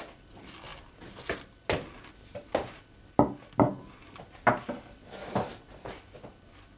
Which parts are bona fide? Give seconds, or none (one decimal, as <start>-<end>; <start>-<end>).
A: 0.0-6.8